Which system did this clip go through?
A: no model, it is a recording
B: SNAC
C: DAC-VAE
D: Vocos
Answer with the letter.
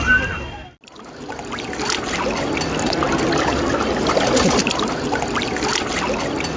A